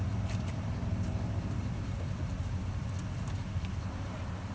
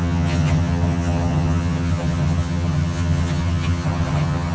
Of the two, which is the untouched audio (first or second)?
first